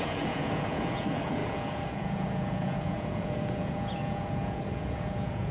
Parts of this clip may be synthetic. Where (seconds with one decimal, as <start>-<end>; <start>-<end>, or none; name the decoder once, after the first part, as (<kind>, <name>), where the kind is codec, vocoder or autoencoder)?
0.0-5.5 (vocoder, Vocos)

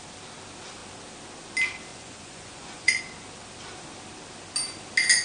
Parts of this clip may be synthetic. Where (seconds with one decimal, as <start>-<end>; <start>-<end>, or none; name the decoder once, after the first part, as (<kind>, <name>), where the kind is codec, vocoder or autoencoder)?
1.9-3.0 (vocoder, Vocos)

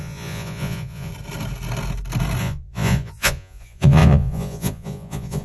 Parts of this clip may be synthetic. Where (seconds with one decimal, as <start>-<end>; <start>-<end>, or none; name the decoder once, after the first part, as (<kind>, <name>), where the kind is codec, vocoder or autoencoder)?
0.0-1.1 (vocoder, Vocos); 2.4-5.4